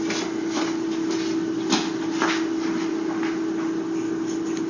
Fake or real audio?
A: real